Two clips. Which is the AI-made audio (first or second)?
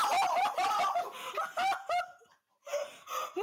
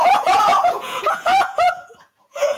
second